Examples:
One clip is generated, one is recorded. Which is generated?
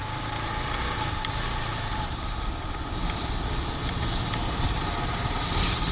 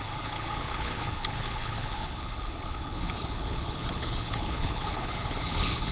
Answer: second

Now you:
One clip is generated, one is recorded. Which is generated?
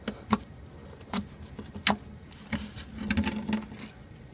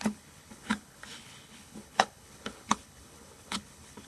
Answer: second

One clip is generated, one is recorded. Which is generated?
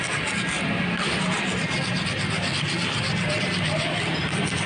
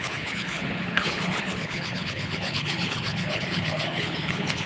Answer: second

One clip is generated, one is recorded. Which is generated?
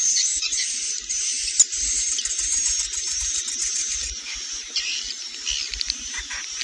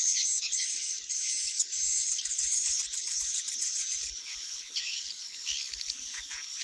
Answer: second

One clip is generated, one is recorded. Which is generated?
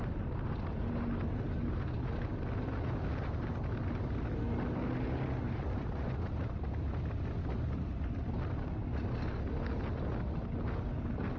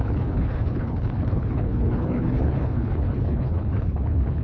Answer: second